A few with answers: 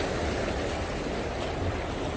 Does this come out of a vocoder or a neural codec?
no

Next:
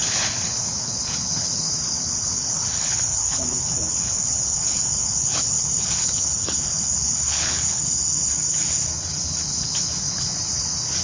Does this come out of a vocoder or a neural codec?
yes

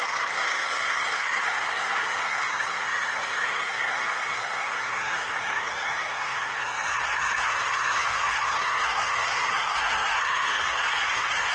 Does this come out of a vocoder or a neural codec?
yes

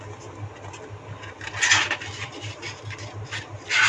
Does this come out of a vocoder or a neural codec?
no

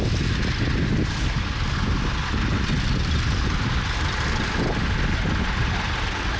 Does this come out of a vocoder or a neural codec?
no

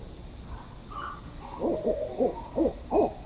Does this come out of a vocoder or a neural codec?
no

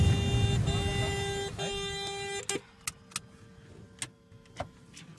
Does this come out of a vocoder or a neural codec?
no